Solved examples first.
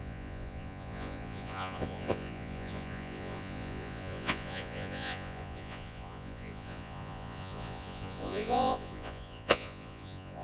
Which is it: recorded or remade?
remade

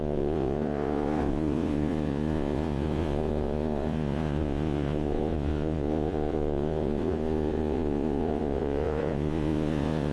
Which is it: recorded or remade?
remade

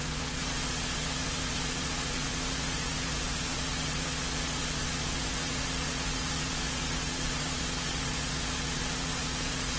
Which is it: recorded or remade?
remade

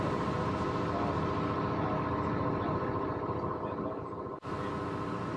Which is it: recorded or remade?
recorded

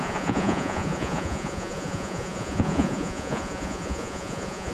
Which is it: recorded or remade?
remade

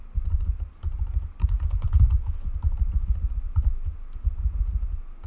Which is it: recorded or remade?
recorded